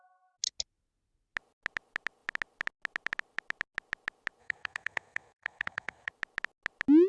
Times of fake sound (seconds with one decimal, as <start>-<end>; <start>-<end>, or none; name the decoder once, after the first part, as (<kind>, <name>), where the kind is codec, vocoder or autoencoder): 4.4-6.1 (codec, SNAC)